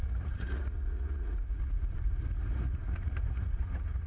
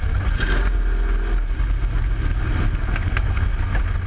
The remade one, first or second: first